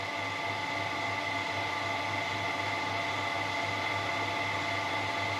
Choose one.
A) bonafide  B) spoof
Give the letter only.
A